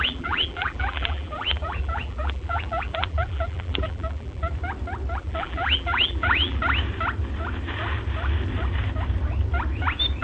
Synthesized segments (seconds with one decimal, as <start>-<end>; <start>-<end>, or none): 0.0-4.5; 5.2-6.6